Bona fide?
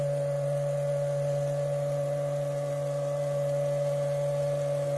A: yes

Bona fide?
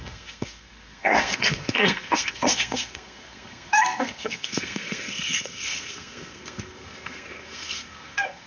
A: no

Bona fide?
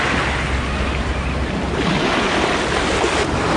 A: yes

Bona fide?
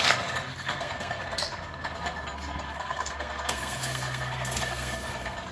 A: no